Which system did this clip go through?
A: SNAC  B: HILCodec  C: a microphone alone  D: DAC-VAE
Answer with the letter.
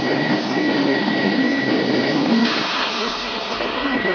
A